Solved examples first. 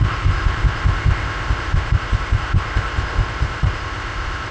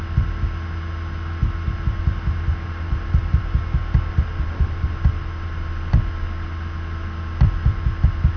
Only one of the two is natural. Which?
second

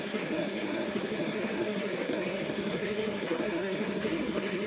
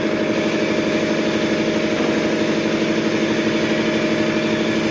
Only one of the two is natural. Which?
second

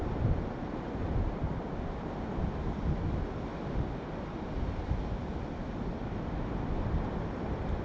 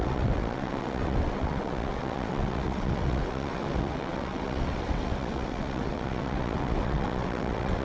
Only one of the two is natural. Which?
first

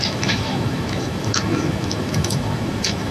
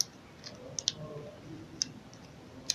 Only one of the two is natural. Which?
second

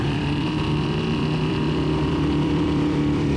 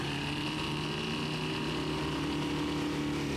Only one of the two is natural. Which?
second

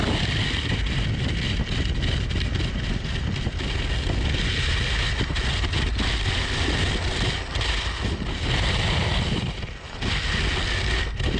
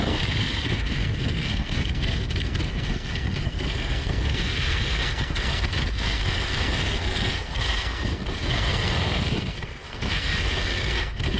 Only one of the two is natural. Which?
first